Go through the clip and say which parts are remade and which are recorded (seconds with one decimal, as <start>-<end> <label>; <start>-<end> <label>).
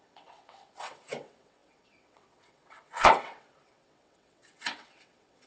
0.0-5.5 remade